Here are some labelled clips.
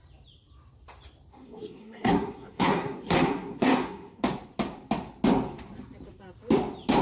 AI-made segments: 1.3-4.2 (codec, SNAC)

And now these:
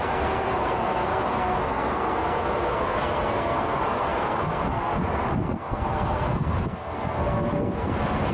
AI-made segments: 0.0-8.3 (codec, SNAC)